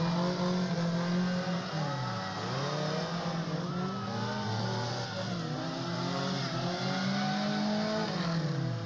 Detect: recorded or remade recorded